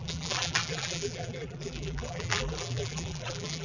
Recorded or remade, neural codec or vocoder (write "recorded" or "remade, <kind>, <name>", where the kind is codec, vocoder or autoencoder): remade, vocoder, BigVGAN v2